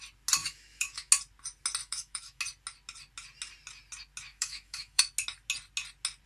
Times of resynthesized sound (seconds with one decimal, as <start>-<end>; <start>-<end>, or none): 0.4-1.1; 1.8-2.4; 4.3-5.0